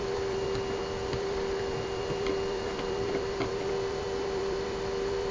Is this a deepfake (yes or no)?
yes